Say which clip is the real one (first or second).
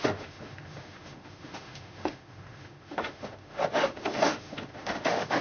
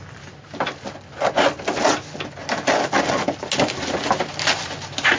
second